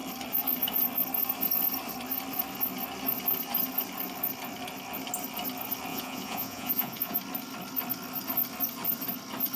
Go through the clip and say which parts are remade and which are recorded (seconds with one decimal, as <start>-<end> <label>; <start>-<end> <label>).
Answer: 0.0-5.9 recorded; 5.9-7.2 remade; 7.2-9.6 recorded

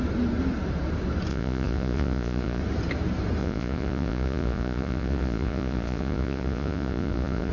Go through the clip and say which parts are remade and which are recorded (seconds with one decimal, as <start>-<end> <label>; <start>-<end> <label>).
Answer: 0.0-1.3 recorded; 1.3-2.6 remade; 2.6-3.4 recorded; 3.4-7.5 remade

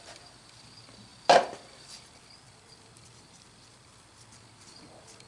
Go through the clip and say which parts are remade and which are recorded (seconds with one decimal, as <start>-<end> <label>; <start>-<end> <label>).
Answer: 0.0-5.3 recorded